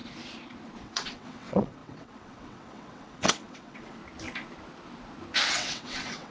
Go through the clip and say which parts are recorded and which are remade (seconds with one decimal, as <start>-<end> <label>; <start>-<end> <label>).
0.0-0.8 recorded; 0.8-4.0 remade; 4.0-5.5 recorded; 5.5-6.3 remade